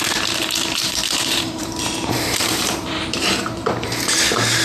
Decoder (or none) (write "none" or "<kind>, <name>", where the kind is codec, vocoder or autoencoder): vocoder, BigVGAN v2